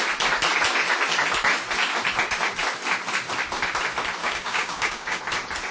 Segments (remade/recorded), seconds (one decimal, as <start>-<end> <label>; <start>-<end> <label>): 0.0-4.2 recorded; 4.2-5.2 remade; 5.2-5.7 recorded